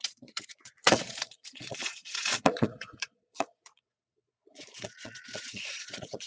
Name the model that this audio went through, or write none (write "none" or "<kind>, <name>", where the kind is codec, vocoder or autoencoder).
vocoder, Vocos